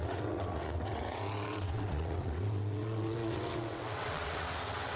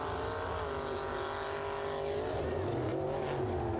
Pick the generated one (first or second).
first